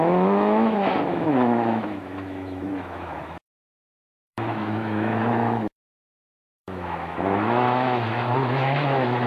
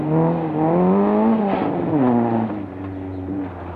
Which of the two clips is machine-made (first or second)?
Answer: first